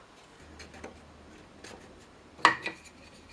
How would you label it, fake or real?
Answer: real